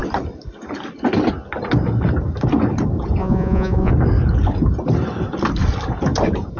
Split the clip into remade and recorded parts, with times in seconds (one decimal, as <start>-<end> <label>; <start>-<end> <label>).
0.0-3.2 recorded; 3.2-3.9 remade; 3.9-6.6 recorded